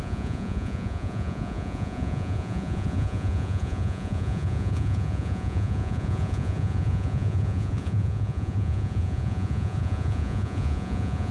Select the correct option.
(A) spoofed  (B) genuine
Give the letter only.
A